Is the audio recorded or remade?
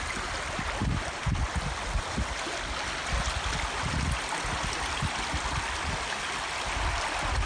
recorded